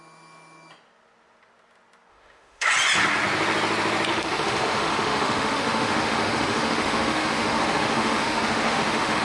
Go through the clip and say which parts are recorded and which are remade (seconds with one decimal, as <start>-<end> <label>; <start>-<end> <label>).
0.0-2.1 recorded; 2.1-2.7 remade; 2.7-4.1 recorded; 4.1-9.2 remade